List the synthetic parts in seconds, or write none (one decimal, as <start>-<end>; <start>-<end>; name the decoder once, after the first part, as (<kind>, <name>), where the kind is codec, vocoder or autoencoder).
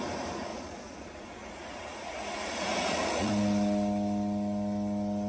0.5-3.3 (vocoder, Vocos)